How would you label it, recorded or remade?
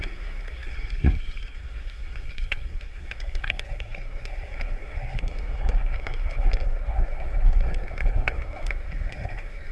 remade